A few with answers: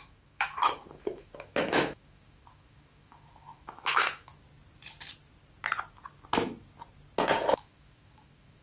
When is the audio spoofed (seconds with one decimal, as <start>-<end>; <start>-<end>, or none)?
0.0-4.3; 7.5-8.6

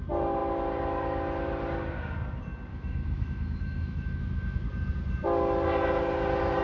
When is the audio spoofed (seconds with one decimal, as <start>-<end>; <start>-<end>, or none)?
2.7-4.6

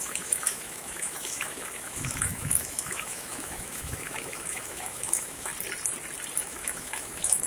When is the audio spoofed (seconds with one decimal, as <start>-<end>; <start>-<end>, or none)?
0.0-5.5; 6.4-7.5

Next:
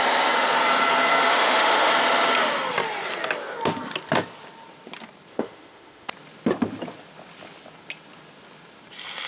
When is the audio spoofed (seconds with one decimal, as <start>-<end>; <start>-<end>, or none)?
1.3-1.9; 5.3-6.1

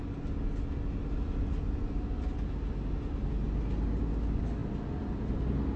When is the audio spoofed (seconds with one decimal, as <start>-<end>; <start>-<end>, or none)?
none

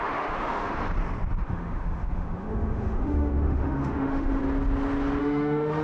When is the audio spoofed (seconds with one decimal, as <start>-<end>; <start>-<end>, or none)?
0.0-0.8; 1.4-4.4; 5.2-5.8

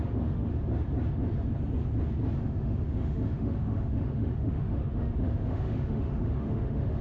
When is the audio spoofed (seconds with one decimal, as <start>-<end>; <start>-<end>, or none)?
0.0-0.5; 2.4-7.0

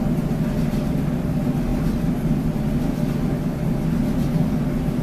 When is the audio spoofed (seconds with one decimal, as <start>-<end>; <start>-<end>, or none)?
none